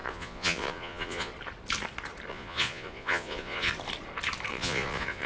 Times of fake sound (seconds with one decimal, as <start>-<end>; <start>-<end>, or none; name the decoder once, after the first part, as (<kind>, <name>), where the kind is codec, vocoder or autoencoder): 0.0-1.3 (vocoder, Vocos); 2.3-3.7; 4.5-5.3